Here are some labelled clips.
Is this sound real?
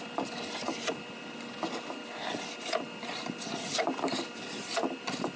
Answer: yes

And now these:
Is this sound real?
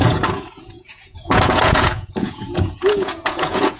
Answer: no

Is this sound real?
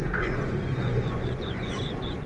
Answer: no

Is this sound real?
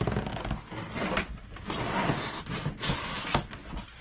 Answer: yes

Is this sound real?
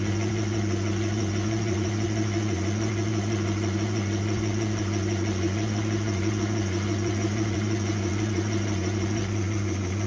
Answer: no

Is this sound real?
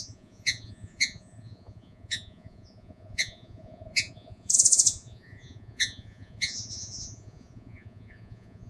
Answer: no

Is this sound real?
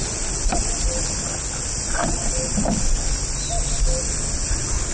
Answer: yes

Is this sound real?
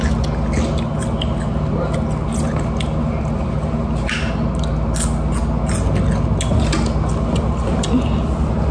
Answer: yes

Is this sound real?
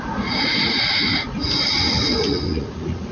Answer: no